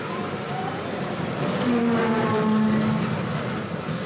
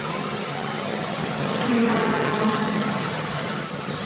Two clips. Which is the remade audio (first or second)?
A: second